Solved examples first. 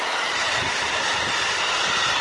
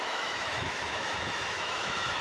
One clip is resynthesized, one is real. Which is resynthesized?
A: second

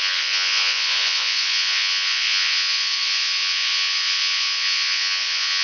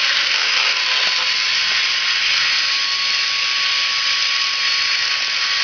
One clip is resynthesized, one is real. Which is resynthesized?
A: first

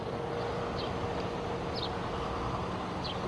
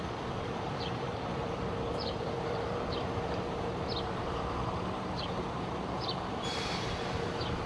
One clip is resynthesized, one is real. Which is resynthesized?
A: second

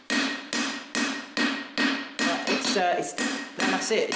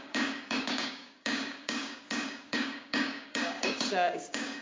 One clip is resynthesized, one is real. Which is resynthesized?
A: second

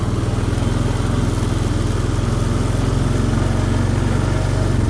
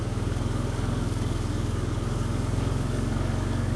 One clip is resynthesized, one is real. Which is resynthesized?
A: second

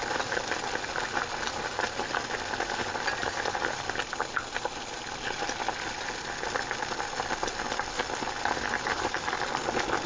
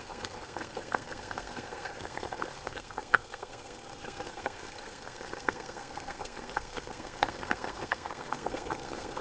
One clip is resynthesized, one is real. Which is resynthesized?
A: second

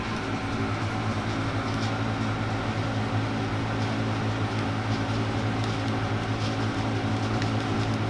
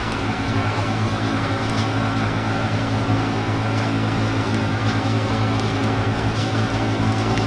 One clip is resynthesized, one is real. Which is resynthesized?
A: second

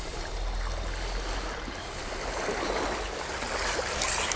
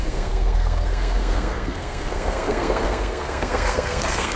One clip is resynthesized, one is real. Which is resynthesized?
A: second